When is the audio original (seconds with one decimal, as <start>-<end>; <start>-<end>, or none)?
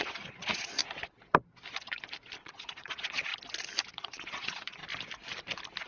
0.8-2.4; 3.3-3.9; 4.8-5.9